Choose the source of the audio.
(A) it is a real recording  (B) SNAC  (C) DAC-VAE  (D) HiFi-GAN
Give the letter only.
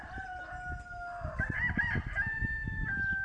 A